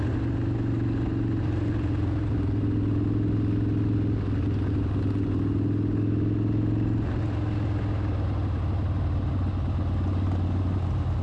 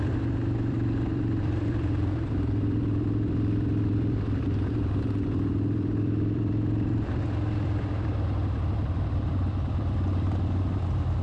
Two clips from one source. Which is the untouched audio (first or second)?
first